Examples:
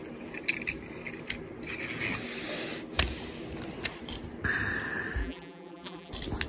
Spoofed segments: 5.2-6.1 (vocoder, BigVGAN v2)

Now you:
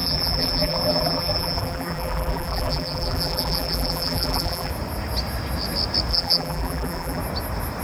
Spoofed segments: 0.0-4.7 (vocoder, BigVGAN v2); 6.1-7.2

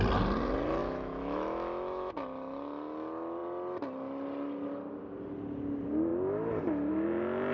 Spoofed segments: 0.8-2.1 (autoencoder, DAC-VAE)

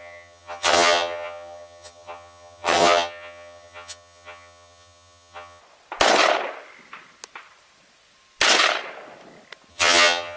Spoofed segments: 0.0-5.6 (vocoder, HiFi-GAN); 9.7-10.4